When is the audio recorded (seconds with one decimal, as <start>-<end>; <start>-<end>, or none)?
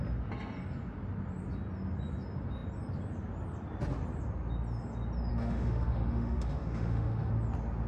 0.0-5.3; 7.3-7.9